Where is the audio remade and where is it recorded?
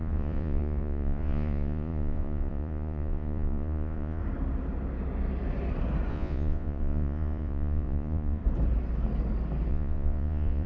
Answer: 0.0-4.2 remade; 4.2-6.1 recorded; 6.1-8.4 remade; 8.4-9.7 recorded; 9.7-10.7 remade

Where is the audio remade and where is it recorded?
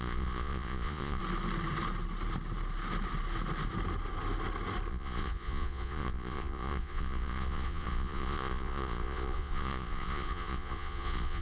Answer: 0.0-1.2 remade; 1.2-4.9 recorded; 4.9-11.4 remade